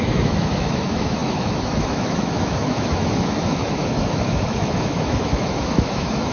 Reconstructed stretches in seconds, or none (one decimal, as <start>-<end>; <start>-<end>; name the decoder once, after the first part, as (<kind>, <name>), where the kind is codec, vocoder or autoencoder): 0.0-6.3 (autoencoder, DAC-VAE)